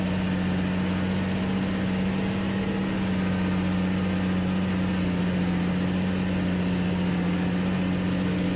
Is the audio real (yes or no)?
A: yes